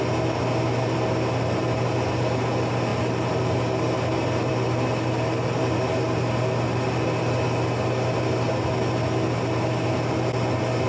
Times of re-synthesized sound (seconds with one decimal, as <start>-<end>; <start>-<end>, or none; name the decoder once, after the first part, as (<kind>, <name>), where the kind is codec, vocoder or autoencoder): none